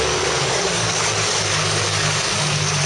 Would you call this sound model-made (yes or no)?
yes